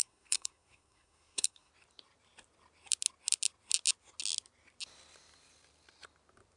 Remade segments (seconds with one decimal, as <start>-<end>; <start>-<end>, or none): 0.0-1.7